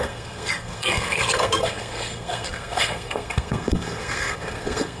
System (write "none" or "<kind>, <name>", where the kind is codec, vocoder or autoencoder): codec, SNAC